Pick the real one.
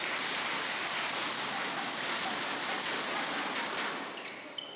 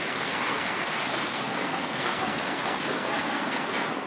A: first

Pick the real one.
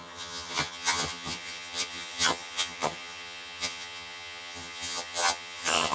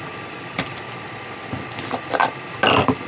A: second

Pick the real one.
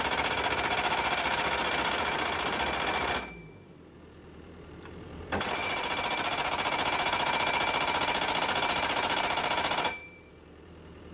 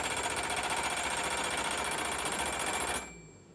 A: second